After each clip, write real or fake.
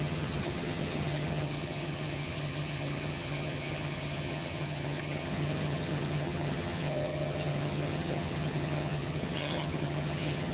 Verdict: fake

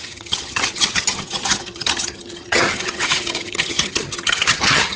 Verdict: fake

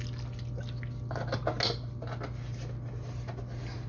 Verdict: real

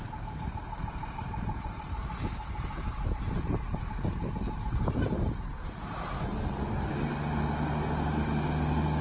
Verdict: real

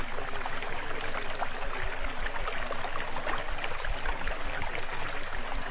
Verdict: real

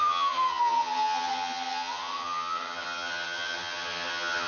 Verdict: fake